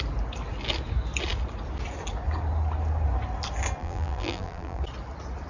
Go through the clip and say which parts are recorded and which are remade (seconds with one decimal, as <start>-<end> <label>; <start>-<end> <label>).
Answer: 0.0-3.8 recorded; 3.8-4.8 remade; 4.8-5.5 recorded